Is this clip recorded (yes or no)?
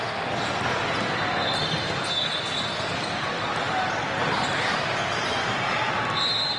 yes